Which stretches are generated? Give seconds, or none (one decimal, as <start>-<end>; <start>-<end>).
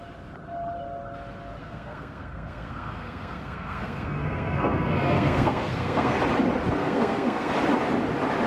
1.6-6.2; 6.8-7.5